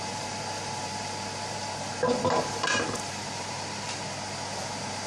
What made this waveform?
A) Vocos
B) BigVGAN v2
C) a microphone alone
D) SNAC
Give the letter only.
B